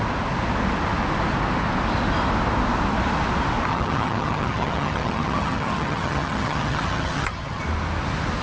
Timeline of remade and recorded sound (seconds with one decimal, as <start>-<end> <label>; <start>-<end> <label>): 0.0-3.7 recorded; 3.7-7.6 remade; 7.6-8.4 recorded